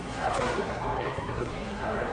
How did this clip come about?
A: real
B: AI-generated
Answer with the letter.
B